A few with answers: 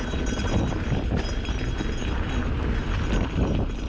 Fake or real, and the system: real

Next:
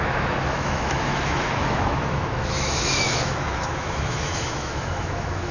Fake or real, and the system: fake, autoencoder, DAC-VAE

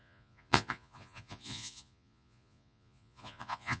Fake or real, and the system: fake, vocoder, Vocos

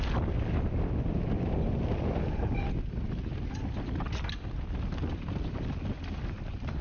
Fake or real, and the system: real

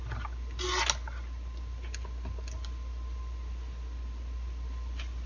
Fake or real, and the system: real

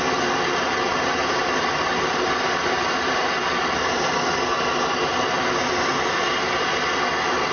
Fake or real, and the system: real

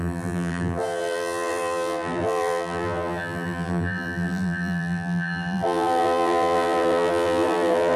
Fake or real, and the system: fake, vocoder, BigVGAN v2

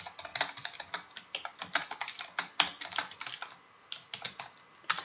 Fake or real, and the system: real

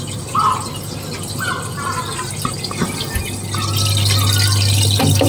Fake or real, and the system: real